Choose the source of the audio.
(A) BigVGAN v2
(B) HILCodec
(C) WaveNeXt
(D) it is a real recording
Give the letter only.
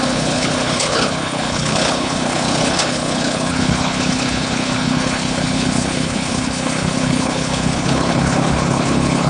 B